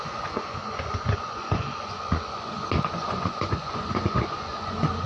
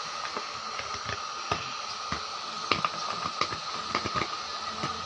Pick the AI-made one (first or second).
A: first